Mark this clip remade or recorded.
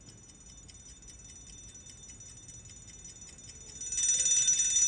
recorded